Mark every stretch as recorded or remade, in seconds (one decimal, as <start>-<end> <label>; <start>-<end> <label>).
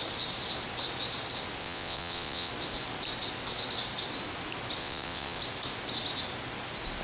0.0-1.6 recorded; 1.6-2.5 remade; 2.5-4.8 recorded; 4.8-5.4 remade; 5.4-7.0 recorded